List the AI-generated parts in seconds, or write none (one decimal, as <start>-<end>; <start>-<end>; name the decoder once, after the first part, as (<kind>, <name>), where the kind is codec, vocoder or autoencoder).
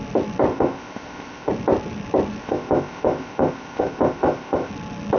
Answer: 0.5-1.5 (codec, ZipCodec); 2.4-4.7